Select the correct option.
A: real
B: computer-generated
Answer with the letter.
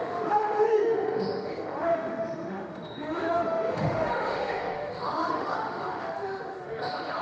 B